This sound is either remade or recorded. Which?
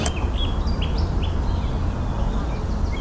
recorded